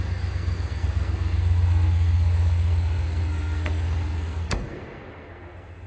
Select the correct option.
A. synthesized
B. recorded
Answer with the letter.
A